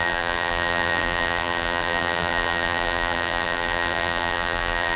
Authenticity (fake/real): fake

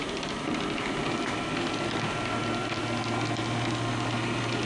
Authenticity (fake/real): real